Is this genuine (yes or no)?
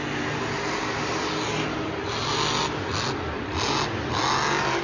yes